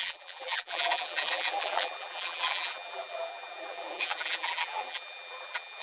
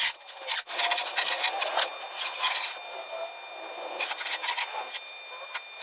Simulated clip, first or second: first